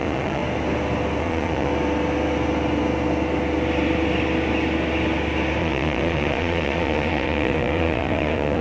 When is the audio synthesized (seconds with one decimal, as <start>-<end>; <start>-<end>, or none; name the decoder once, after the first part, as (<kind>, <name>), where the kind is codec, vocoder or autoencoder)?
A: 0.0-0.4 (vocoder, Vocos); 1.2-1.7; 5.6-8.6